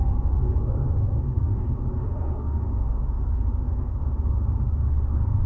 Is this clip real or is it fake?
fake